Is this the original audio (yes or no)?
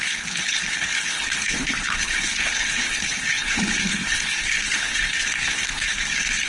no